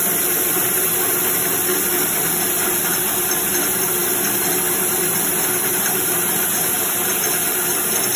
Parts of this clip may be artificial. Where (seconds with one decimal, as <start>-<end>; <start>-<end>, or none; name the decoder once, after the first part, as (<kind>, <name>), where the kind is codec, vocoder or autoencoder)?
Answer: none